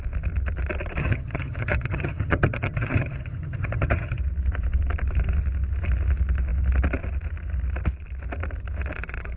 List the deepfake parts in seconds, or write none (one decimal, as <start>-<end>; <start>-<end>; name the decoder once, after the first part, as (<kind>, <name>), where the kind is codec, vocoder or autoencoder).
1.0-4.2 (vocoder, HiFi-GAN)